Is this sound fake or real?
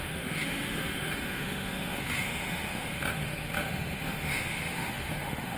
fake